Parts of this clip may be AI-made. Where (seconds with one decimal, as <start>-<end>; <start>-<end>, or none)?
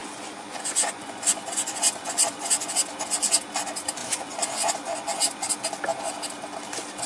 0.0-2.8; 4.0-5.5